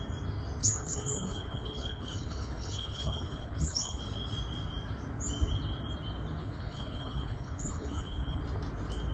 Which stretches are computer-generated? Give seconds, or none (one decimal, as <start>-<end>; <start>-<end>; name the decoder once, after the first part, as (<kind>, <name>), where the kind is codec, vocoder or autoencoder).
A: 0.6-4.0 (codec, HILCodec); 6.4-8.4